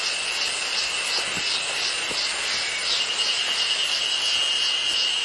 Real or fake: real